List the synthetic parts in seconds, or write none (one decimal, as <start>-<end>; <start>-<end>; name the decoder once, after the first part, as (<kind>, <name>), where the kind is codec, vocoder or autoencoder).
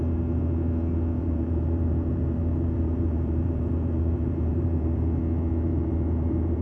1.2-5.2 (vocoder, BigVGAN v2); 5.7-6.6